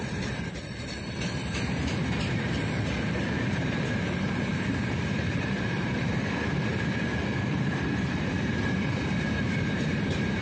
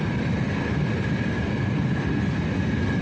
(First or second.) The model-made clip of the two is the first